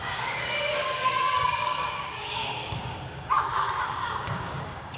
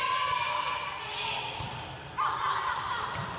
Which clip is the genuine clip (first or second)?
second